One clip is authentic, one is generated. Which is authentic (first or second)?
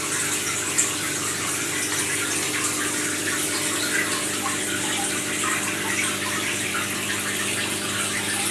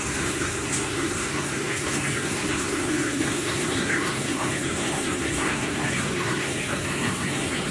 first